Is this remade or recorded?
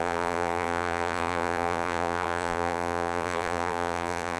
remade